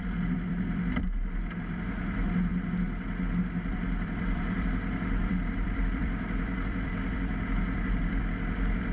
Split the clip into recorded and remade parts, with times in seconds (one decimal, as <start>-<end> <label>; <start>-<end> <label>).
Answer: 0.0-2.5 remade; 2.5-3.7 recorded; 3.7-8.9 remade